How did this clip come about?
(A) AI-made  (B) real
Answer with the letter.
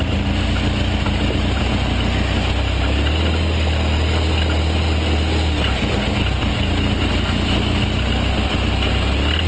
B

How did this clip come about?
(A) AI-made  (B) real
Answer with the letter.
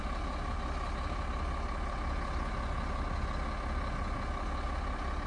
B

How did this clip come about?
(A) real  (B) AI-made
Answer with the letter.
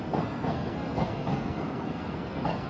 B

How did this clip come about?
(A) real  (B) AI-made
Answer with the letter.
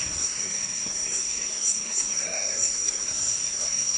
B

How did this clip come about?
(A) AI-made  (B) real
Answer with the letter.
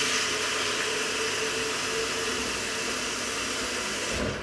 B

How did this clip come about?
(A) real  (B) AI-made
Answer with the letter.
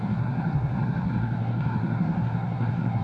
B